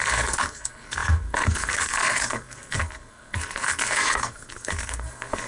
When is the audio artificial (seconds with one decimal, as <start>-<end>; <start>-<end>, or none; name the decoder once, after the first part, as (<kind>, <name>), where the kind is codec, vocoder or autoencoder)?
0.0-5.5 (codec, SNAC)